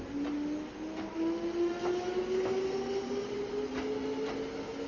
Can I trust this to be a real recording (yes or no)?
yes